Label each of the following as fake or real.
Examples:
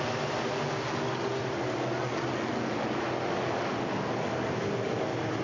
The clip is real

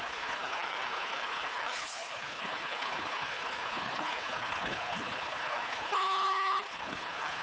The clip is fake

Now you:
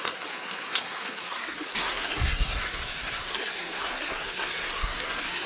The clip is fake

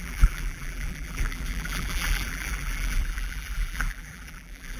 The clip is fake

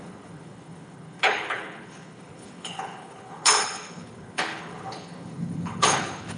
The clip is fake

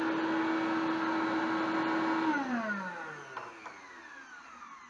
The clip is real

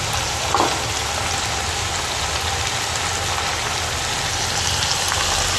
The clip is real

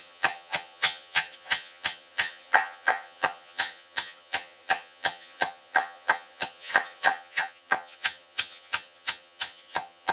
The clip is fake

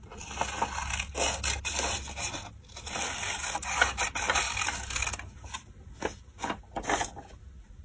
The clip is real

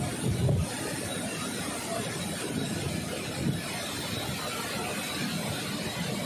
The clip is real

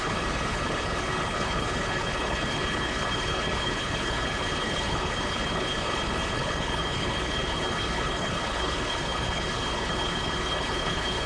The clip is fake